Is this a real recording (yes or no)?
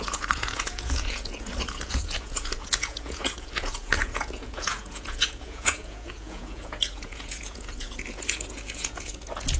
no